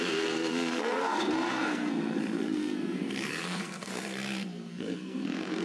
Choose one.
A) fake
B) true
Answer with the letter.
A